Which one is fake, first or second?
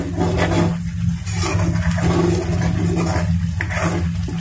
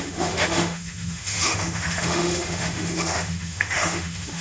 second